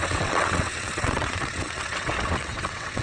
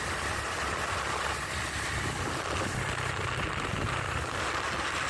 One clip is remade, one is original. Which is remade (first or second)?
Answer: first